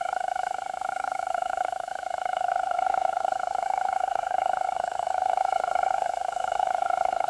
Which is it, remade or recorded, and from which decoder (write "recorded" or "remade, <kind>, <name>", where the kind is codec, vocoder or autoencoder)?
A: remade, codec, SNAC